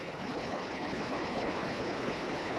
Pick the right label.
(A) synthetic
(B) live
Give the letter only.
A